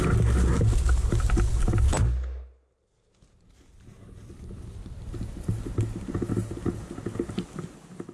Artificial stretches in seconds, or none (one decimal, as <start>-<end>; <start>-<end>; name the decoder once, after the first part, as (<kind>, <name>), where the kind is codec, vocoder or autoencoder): none